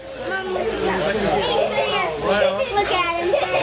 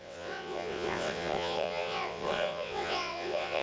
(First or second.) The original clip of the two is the first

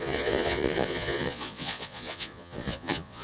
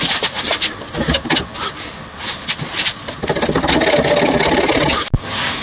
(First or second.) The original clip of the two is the second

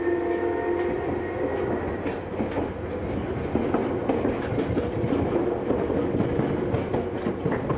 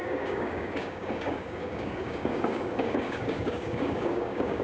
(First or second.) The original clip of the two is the first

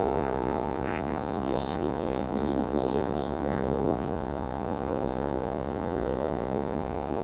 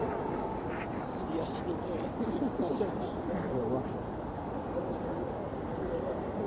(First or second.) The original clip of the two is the second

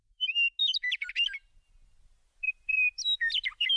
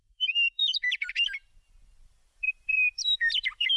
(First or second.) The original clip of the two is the first